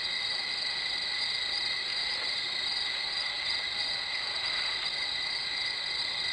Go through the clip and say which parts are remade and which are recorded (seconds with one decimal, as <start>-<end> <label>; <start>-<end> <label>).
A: 0.0-6.3 recorded